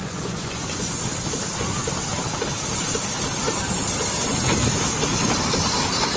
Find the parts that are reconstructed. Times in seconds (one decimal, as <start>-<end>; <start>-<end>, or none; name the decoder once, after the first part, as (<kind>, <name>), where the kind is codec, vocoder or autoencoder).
0.0-1.0 (vocoder, Vocos)